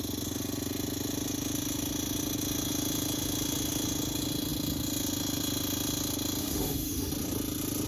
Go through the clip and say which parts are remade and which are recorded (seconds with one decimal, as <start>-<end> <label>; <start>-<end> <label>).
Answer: 0.0-6.4 recorded; 6.4-7.1 remade; 7.1-7.9 recorded